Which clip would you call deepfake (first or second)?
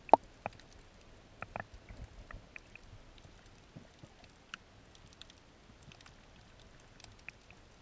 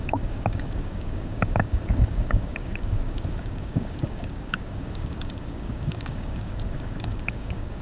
second